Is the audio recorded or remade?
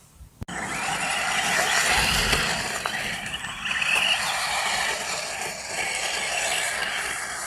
recorded